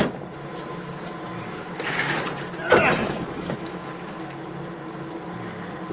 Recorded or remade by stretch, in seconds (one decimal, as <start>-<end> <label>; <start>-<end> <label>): 0.0-3.0 recorded; 3.0-3.9 remade; 3.9-5.9 recorded